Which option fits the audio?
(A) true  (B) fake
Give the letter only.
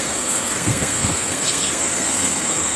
B